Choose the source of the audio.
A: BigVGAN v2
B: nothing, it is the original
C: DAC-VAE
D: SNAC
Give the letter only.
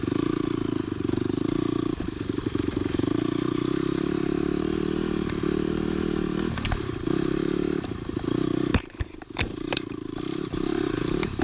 A